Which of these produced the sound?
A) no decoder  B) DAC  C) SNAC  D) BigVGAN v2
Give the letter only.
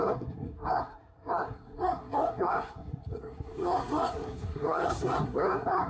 C